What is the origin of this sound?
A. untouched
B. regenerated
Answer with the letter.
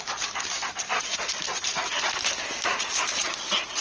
A